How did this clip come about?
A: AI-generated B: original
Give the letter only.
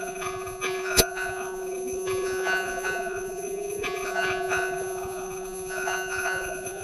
A